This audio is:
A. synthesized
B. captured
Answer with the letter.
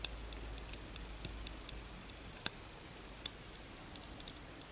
B